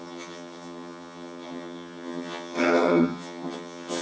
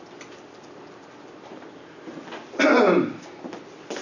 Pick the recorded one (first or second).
second